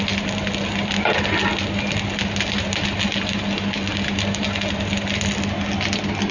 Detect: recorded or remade recorded